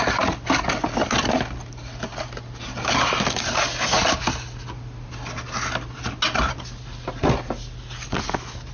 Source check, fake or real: real